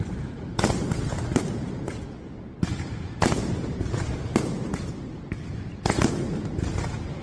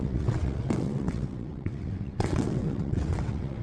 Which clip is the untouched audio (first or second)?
first